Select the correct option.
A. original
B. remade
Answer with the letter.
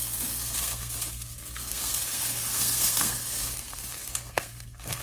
B